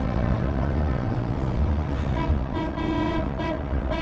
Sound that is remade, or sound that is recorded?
remade